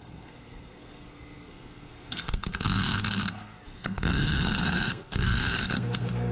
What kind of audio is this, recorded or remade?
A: remade